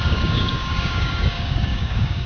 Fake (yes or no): yes